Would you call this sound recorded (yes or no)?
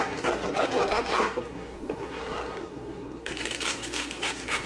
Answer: no